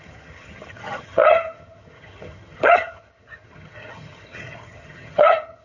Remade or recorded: remade